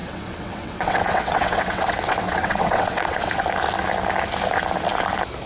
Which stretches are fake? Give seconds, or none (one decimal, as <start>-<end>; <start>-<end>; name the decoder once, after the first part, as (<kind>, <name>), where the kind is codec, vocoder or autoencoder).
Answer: 0.0-3.3 (vocoder, WaveNeXt)